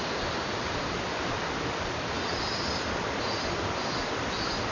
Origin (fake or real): real